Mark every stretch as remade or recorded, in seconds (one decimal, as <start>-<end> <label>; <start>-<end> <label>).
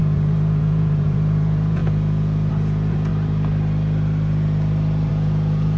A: 0.0-3.1 remade; 3.1-5.1 recorded; 5.1-5.8 remade